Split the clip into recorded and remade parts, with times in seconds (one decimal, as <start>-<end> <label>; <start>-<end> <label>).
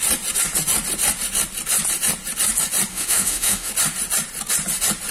0.0-2.9 recorded; 2.9-3.7 remade; 3.7-5.1 recorded